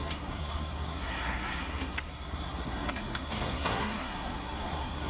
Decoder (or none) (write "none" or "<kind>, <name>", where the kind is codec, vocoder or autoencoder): codec, SNAC